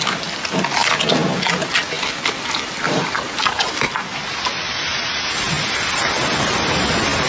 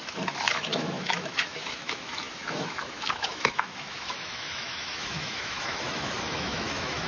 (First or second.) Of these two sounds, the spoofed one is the second